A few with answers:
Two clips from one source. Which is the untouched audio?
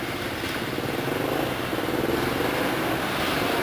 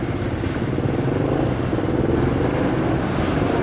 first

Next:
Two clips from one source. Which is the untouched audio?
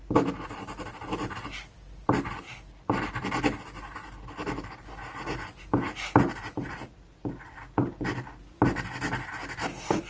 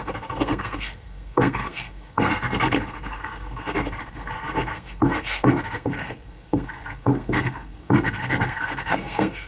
first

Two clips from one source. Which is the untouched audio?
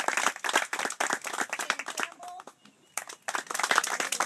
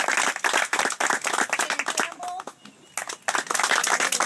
second